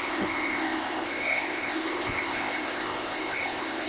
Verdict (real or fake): fake